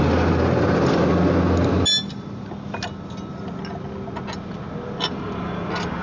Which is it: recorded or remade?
recorded